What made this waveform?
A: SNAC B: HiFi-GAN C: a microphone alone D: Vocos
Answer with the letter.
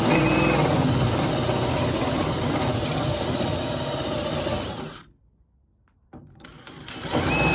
C